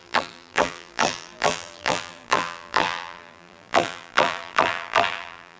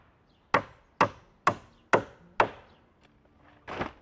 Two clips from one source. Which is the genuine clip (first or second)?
second